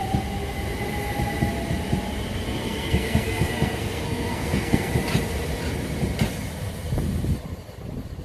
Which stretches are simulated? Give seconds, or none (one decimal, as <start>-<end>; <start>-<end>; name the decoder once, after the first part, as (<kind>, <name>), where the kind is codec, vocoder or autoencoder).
2.6-4.9 (codec, SNAC)